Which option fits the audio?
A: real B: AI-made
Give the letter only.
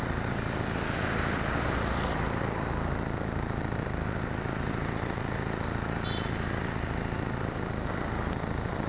A